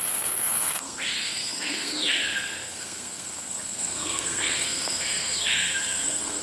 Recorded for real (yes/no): no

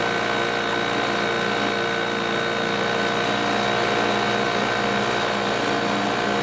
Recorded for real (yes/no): yes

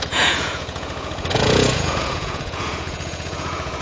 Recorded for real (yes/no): no